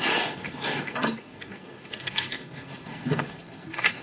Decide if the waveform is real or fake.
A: fake